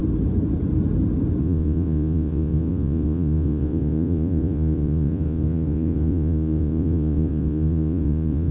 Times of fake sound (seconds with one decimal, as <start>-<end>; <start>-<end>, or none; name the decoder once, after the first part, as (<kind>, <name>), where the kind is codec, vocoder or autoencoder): 1.4-8.5 (vocoder, Vocos)